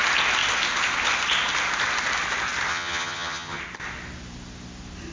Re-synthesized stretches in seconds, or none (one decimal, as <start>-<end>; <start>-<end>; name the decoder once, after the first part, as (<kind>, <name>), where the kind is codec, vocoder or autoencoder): 2.7-3.6 (vocoder, HiFi-GAN)